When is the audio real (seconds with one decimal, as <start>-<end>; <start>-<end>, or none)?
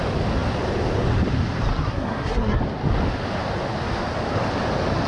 0.0-1.7; 2.6-5.1